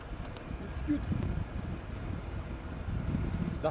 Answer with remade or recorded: recorded